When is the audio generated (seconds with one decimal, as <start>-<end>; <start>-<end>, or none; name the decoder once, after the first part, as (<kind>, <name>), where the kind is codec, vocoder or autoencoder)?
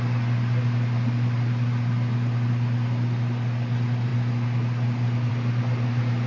none